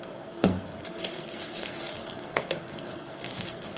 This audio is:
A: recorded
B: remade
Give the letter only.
B